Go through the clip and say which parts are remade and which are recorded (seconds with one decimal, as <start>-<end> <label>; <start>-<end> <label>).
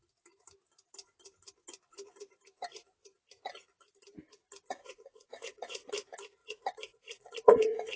0.0-4.8 recorded; 4.8-5.9 remade; 5.9-6.4 recorded; 6.4-8.0 remade